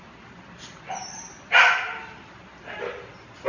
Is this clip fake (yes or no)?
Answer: no